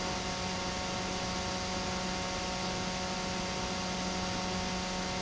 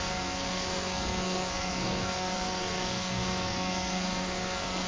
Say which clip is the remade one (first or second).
second